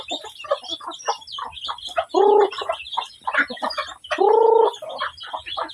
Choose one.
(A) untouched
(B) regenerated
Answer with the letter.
A